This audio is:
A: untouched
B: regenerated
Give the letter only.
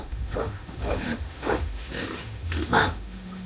B